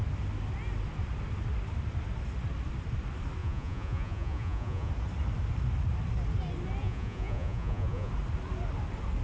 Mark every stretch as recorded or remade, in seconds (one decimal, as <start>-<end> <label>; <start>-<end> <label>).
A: 0.0-3.4 recorded; 3.4-4.9 remade; 4.9-6.8 recorded; 6.8-8.1 remade; 8.1-9.2 recorded

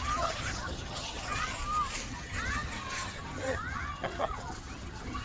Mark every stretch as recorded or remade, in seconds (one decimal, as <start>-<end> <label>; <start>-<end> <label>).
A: 0.0-1.6 remade; 1.6-2.1 recorded; 2.1-5.2 remade